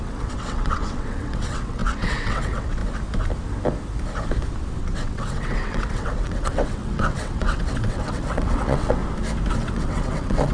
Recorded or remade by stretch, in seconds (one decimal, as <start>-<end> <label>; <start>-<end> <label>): 0.0-2.8 remade; 2.8-4.8 recorded; 4.8-9.0 remade; 9.0-9.5 recorded; 9.5-10.5 remade